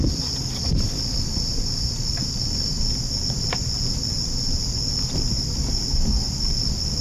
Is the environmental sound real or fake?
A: real